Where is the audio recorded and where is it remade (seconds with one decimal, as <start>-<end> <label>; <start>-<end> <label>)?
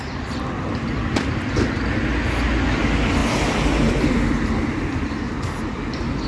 0.0-1.0 recorded; 1.0-1.6 remade; 1.6-6.3 recorded